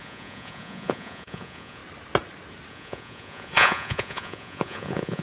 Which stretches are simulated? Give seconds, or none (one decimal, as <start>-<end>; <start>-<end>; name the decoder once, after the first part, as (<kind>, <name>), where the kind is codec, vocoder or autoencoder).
0.0-1.8 (vocoder, Vocos); 2.7-5.2